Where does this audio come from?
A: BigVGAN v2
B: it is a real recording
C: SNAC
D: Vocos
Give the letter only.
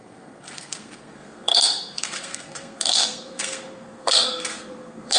C